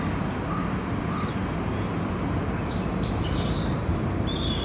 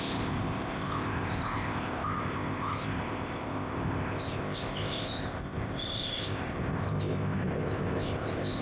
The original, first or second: first